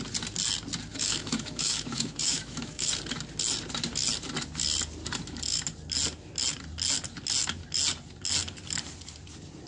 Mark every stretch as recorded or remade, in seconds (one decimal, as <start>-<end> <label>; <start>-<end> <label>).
0.0-0.9 recorded; 0.9-2.9 remade; 2.9-9.7 recorded